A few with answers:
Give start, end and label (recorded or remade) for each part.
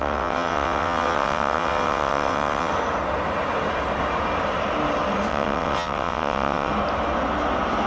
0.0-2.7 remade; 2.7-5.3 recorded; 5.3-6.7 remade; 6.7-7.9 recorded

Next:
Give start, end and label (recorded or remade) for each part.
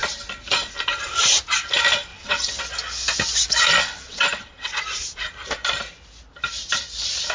0.0-2.1 recorded; 2.1-2.6 remade; 2.6-3.8 recorded; 3.8-4.8 remade; 4.8-7.3 recorded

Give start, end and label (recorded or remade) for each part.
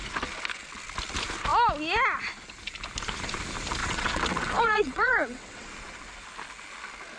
0.0-3.8 recorded; 3.8-5.7 remade; 5.7-7.2 recorded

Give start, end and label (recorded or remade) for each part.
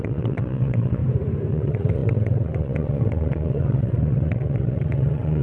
0.0-1.0 remade; 1.0-1.5 recorded; 1.5-5.4 remade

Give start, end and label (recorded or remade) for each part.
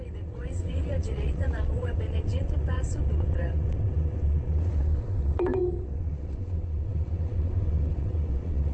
0.0-8.7 remade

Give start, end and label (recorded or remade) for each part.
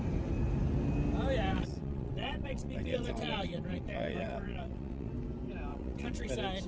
0.0-1.5 recorded; 1.5-5.1 remade; 5.1-5.7 recorded; 5.7-6.3 remade; 6.3-6.7 recorded